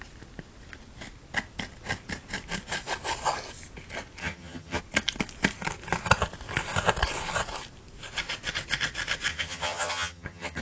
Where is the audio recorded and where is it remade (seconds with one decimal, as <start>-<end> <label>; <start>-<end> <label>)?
0.0-4.2 recorded; 4.2-4.8 remade; 4.8-9.3 recorded; 9.3-10.6 remade